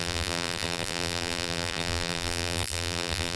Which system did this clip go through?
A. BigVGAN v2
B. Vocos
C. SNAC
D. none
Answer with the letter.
A